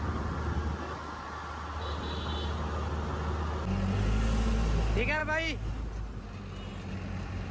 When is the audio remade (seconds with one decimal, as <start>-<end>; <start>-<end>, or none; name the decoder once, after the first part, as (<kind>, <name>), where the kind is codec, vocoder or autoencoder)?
none

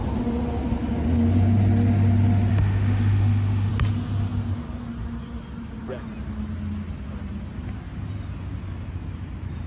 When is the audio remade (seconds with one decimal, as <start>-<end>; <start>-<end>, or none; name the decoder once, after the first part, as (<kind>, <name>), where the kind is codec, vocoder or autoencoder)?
2.5-3.7 (autoencoder, DAC-VAE)

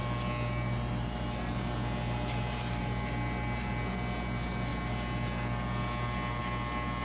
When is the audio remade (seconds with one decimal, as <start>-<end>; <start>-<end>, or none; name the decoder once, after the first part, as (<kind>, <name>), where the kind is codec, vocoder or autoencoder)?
none

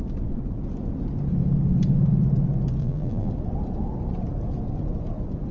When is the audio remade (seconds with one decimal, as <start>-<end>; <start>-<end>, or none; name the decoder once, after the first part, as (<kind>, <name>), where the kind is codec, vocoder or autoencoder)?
2.8-3.3 (vocoder, BigVGAN v2)

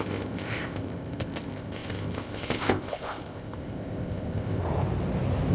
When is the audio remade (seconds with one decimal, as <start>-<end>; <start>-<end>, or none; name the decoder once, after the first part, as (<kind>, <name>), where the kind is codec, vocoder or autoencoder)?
0.0-4.6 (codec, ZipCodec)

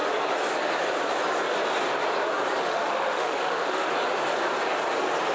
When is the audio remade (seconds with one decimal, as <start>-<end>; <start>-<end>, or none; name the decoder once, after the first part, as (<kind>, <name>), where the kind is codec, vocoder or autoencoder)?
2.6-3.9 (autoencoder, DAC-VAE)